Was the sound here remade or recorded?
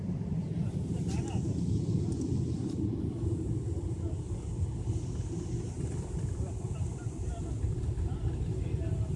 recorded